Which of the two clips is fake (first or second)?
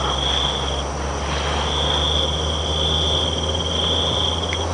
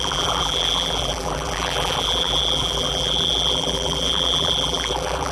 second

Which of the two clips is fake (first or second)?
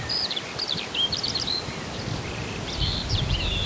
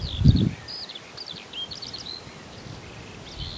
first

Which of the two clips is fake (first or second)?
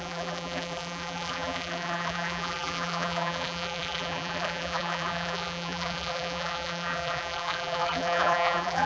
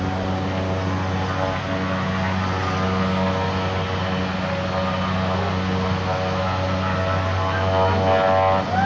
first